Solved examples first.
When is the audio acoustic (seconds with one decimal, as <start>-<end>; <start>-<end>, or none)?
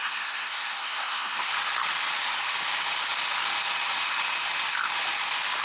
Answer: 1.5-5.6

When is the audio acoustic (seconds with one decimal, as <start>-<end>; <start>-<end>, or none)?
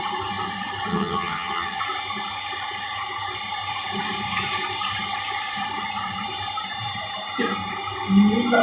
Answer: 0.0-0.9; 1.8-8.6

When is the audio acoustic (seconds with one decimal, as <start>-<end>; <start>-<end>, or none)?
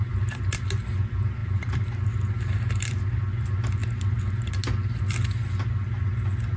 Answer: 0.0-1.4; 2.1-6.6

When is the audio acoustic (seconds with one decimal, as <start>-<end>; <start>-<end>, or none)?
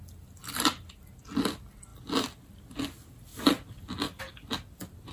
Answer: 0.0-5.1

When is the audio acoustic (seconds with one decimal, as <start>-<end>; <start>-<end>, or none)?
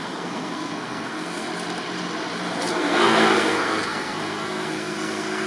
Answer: 1.5-2.7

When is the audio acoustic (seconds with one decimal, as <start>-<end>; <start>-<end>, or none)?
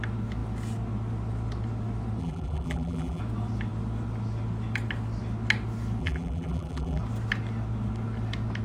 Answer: 0.0-2.2; 3.2-6.0; 7.0-8.6